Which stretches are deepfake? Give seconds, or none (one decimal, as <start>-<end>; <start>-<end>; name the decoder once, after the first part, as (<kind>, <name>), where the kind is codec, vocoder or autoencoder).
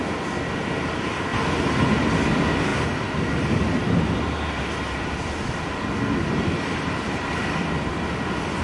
0.0-1.3 (vocoder, BigVGAN v2); 2.3-8.6